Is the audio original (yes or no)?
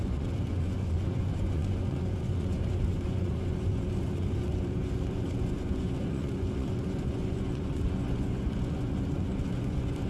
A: no